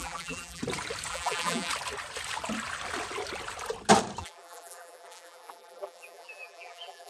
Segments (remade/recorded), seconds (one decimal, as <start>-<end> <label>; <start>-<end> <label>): 0.0-0.6 remade; 0.6-1.1 recorded; 1.1-1.7 remade; 1.7-4.2 recorded; 4.2-7.1 remade